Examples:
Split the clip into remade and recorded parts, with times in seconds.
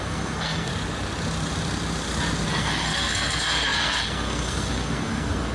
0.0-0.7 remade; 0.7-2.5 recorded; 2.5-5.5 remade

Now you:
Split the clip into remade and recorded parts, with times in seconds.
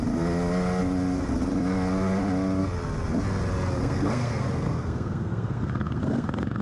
0.0-3.8 recorded; 3.8-6.6 remade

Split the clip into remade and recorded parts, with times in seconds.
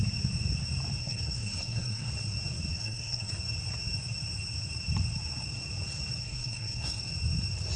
0.0-1.0 recorded; 1.0-2.1 remade; 2.1-2.7 recorded; 2.7-3.3 remade; 3.3-6.2 recorded; 6.2-7.0 remade; 7.0-7.8 recorded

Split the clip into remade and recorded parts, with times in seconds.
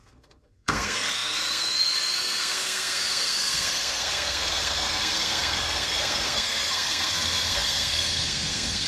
0.0-8.9 remade